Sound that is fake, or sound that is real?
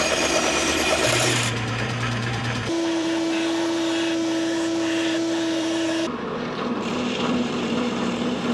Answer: fake